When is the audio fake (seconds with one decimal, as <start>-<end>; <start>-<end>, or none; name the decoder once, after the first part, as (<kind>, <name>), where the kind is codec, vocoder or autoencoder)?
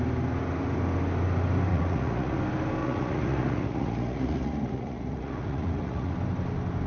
1.7-2.4 (vocoder, Vocos); 2.8-6.1